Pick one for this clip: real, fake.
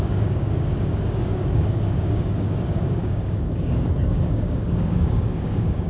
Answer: fake